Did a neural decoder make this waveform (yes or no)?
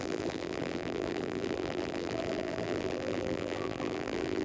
yes